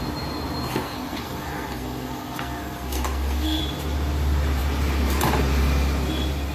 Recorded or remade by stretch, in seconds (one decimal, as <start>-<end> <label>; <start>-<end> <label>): 0.0-0.7 recorded; 0.7-3.6 remade; 3.6-6.5 recorded